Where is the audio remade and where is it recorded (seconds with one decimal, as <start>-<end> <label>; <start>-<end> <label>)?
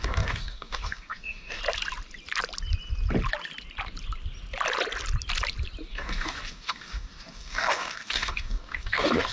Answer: 0.0-1.6 remade; 1.6-5.9 recorded; 5.9-9.3 remade